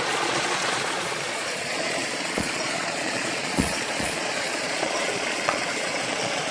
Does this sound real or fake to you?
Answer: fake